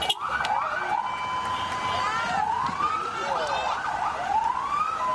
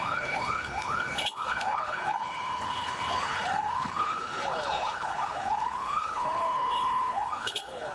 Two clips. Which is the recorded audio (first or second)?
first